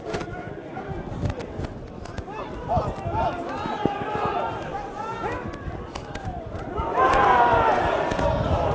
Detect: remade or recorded recorded